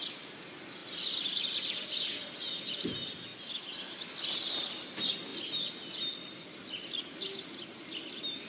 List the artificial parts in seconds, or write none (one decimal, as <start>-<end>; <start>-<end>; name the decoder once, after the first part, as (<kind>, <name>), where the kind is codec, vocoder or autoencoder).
none